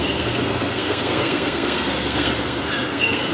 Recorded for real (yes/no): no